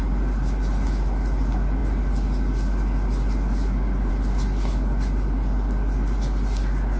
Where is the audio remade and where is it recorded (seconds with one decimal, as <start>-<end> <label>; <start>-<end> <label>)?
0.0-7.0 recorded